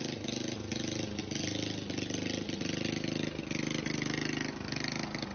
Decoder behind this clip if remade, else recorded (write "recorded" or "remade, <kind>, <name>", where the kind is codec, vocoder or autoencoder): recorded